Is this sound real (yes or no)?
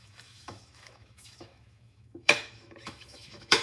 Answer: no